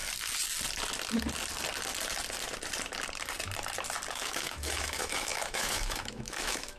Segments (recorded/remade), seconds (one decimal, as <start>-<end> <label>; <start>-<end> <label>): 0.0-4.1 recorded; 4.1-6.8 remade